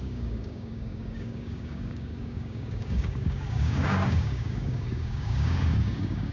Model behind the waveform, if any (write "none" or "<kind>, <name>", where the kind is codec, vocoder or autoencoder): codec, DAC